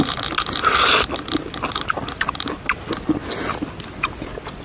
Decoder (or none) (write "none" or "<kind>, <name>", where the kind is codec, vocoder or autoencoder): none